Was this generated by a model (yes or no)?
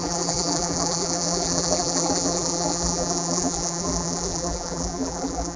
yes